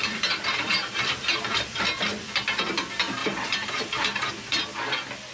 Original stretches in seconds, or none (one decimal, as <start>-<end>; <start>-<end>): 1.9-3.2; 4.3-5.3